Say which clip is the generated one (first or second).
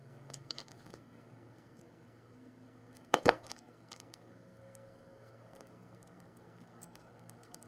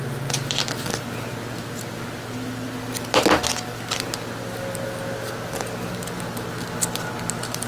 first